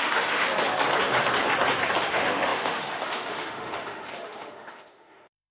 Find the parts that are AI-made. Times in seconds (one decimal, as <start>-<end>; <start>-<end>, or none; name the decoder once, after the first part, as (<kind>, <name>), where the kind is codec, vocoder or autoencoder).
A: 0.0-0.5 (autoencoder, DAC-VAE); 2.1-5.5